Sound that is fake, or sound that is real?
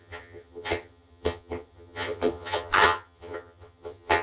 fake